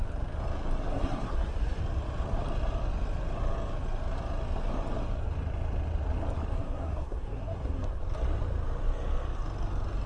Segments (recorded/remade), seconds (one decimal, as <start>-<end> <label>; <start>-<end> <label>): 0.0-0.9 recorded; 0.9-1.8 remade; 1.8-6.5 recorded; 6.5-8.0 remade; 8.0-10.1 recorded